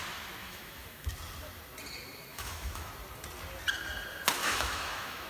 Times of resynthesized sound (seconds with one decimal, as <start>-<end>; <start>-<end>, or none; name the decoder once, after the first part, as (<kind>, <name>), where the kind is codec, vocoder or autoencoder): 0.4-1.1 (autoencoder, DAC-VAE); 2.3-2.9; 4.4-5.3